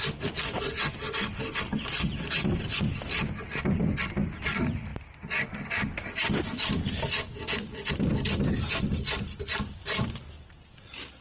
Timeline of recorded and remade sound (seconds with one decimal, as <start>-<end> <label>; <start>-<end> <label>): 0.0-11.2 recorded